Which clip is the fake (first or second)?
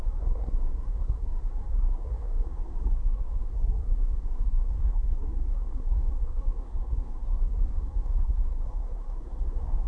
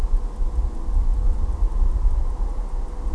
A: first